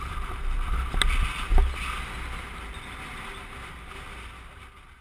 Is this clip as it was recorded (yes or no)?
yes